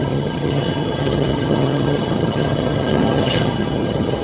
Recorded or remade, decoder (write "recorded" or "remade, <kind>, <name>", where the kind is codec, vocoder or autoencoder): remade, vocoder, HiFi-GAN